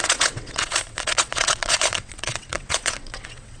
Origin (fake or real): fake